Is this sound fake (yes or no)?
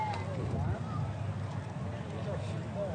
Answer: no